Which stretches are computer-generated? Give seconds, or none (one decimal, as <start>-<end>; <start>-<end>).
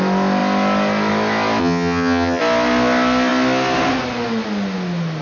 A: 1.6-2.4